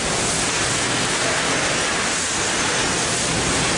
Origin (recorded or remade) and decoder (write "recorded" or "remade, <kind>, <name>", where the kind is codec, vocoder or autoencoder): recorded